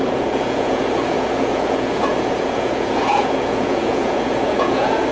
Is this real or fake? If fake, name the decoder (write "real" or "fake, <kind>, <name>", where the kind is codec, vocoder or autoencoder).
fake, vocoder, Vocos